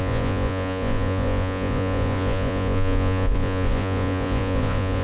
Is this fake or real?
fake